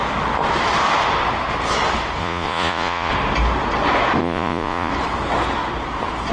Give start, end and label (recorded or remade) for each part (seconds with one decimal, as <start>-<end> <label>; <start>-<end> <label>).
0.0-2.2 recorded; 2.2-3.1 remade; 3.1-4.2 recorded; 4.2-4.9 remade; 4.9-6.3 recorded